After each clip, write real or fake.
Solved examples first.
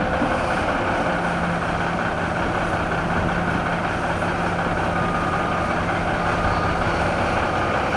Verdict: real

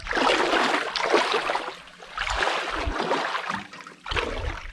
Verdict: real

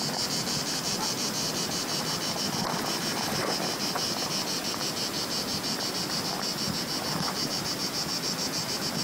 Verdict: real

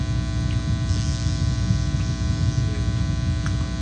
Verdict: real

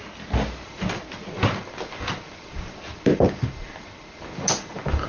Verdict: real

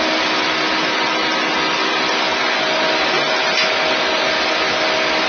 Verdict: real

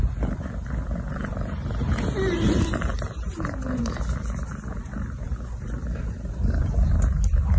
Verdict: fake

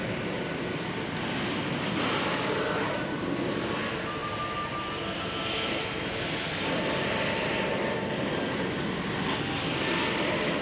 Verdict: real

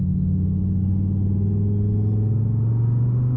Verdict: real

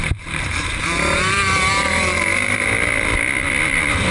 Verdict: fake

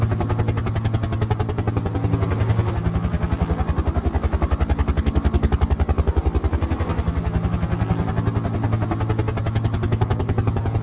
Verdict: real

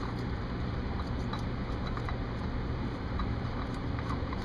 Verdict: fake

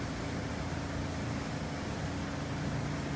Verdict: real